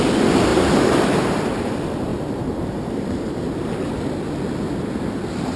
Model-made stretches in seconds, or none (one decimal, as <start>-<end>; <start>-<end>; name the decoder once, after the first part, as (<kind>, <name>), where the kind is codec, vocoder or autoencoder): 0.5-1.6 (vocoder, BigVGAN v2); 2.1-3.4